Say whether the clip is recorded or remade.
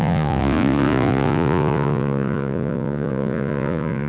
remade